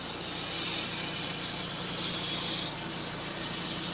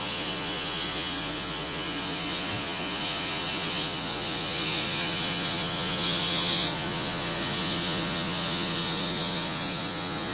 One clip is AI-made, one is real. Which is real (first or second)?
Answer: first